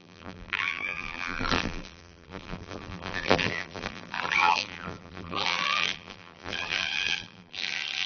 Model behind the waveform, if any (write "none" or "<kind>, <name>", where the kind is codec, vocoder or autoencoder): vocoder, BigVGAN v2